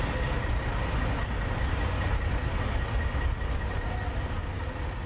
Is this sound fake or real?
real